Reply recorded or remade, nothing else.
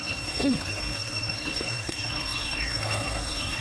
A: remade